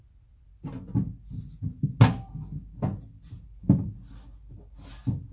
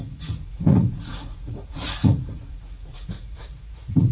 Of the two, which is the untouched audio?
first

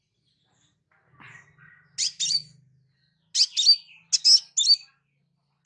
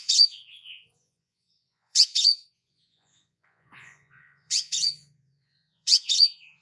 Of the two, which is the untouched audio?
first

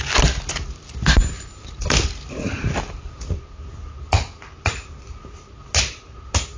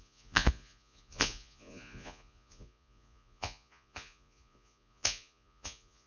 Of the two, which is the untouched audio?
first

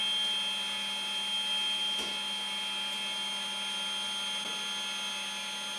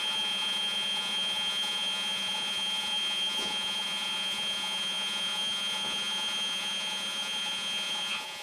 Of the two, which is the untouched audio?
first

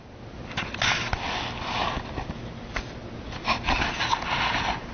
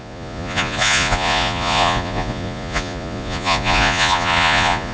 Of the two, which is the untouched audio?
first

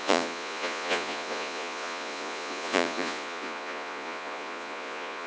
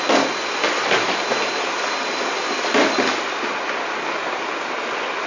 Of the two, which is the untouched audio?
second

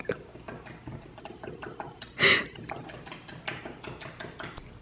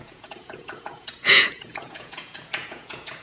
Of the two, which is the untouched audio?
first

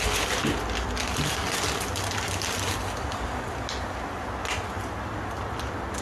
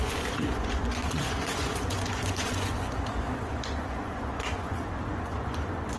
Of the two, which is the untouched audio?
first